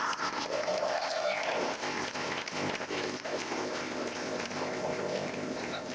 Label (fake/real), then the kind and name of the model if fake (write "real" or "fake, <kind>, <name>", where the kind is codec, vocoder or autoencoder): fake, codec, ZipCodec